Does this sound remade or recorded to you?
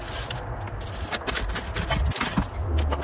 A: recorded